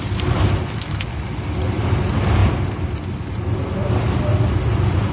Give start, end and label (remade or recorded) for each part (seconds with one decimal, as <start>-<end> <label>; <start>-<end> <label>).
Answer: 0.0-5.1 recorded